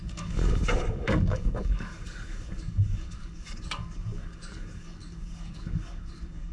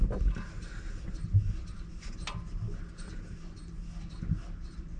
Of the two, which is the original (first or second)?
second